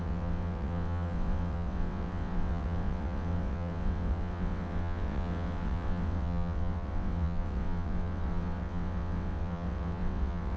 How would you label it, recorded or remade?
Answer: remade